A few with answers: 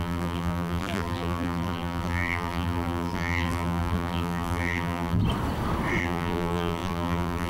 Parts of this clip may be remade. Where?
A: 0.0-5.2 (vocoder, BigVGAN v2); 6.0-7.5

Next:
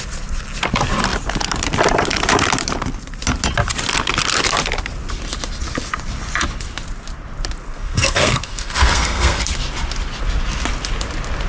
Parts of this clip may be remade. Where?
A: 7.6-9.4 (codec, SNAC)

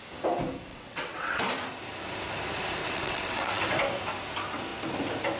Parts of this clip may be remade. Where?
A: 0.7-1.4 (vocoder, WaveNeXt); 2.8-3.6

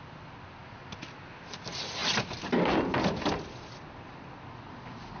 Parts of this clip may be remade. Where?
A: none

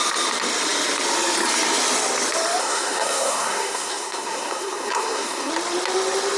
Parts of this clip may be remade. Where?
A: 2.6-5.5 (codec, SNAC)

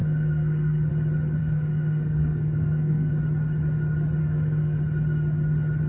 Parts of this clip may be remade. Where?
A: 0.0-0.9 (codec, SNAC); 1.4-3.1; 4.2-4.8

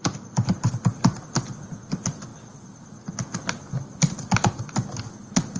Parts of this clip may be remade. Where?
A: none

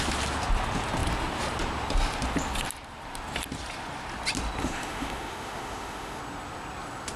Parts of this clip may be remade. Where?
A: 4.6-6.2 (autoencoder, DAC-VAE)